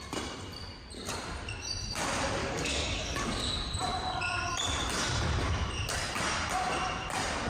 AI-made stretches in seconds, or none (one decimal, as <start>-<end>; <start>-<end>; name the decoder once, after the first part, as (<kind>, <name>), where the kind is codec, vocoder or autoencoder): 2.4-3.5 (codec, DAC)